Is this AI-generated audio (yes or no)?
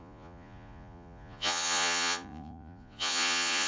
yes